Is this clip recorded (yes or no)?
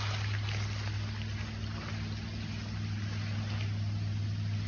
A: yes